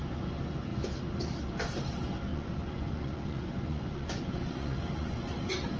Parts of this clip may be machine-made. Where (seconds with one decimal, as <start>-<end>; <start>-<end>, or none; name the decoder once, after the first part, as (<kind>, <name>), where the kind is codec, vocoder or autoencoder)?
2.3-5.8 (vocoder, Vocos)